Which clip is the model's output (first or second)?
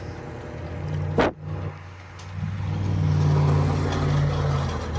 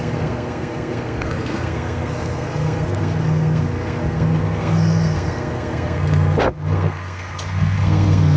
second